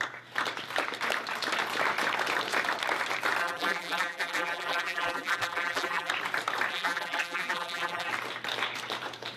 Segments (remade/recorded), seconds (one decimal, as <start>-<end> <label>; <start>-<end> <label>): 0.0-3.4 recorded; 3.4-6.1 remade; 6.1-6.7 recorded; 6.7-8.1 remade; 8.1-9.4 recorded